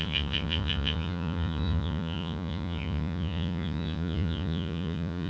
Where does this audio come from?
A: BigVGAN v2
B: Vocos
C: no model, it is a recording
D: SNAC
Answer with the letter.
B